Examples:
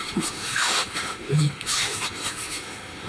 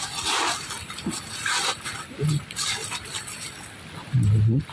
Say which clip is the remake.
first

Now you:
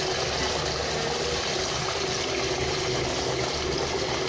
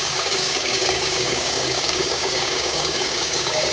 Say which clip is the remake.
second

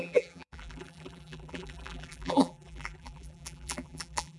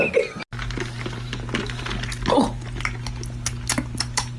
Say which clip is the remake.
first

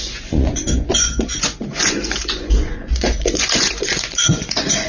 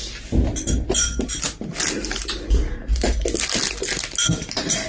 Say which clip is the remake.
first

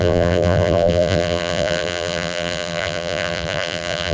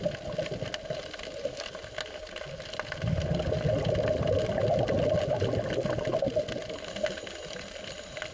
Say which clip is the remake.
first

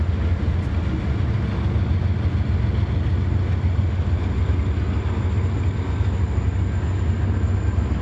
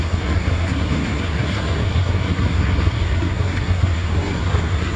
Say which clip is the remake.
second